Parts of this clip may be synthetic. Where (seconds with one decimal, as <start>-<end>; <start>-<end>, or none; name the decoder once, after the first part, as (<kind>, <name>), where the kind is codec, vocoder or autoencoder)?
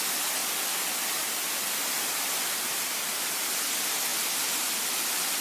0.4-3.6 (vocoder, BigVGAN v2); 4.1-4.9